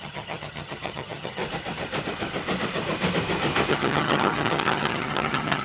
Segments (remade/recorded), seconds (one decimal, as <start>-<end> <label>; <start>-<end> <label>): 0.0-1.4 remade; 1.4-3.7 recorded; 3.7-5.6 remade